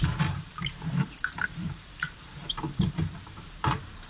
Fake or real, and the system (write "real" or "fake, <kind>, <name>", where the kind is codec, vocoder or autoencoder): fake, vocoder, BigVGAN v2